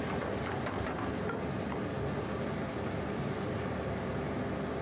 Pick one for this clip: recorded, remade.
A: recorded